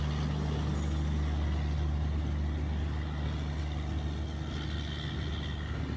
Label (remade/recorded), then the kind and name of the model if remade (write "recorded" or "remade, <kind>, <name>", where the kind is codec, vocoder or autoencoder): recorded